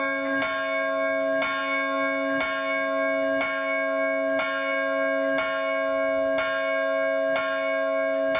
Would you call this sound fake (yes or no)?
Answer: no